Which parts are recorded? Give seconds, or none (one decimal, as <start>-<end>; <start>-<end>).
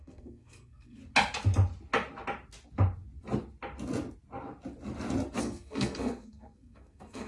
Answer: 1.0-5.4